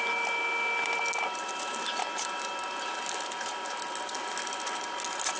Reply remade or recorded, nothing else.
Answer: recorded